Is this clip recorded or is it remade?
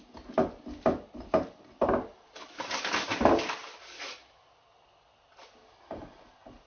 recorded